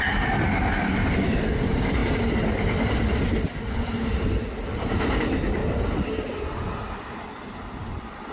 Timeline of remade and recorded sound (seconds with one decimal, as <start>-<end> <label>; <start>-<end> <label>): 0.0-2.0 remade; 2.0-2.9 recorded; 2.9-5.6 remade; 5.6-8.3 recorded